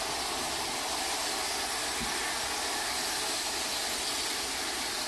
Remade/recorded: recorded